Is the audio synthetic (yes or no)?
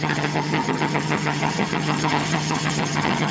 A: yes